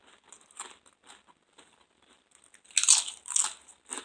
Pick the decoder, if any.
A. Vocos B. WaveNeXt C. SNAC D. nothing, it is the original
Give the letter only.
D